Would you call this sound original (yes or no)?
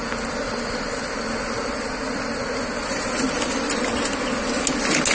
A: yes